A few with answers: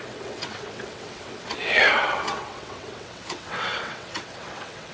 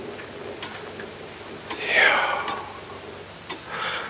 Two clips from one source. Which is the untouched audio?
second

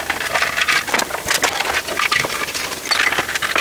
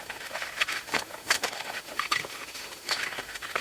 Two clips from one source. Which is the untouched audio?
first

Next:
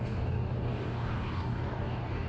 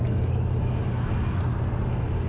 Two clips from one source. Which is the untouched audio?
second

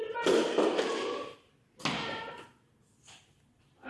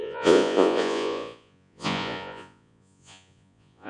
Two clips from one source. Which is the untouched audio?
first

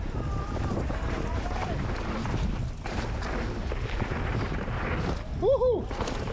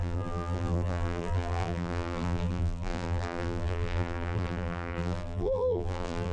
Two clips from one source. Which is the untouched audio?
first